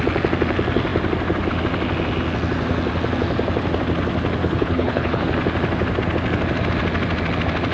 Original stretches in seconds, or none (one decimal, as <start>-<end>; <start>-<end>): 0.0-4.4; 5.3-7.7